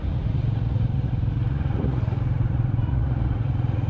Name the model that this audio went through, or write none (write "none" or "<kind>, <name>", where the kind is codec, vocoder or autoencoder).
vocoder, Vocos